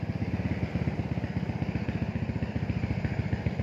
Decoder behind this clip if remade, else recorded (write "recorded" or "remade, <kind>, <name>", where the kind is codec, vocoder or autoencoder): recorded